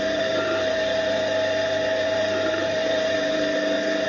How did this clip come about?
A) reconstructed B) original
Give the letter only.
A